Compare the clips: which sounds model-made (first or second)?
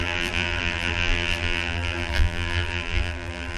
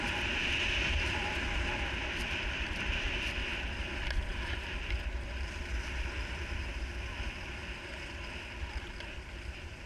first